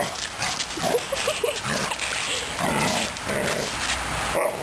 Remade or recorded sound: recorded